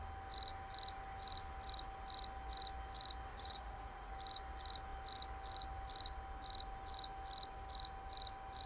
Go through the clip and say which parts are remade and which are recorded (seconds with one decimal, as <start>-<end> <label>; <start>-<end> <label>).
0.0-3.3 recorded; 3.3-4.1 remade; 4.1-8.7 recorded